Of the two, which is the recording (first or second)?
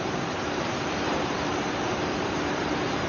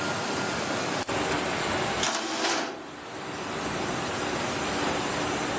second